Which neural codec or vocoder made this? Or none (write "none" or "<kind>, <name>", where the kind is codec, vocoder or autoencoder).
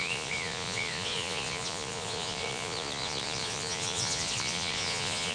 vocoder, Vocos